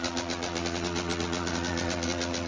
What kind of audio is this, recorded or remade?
remade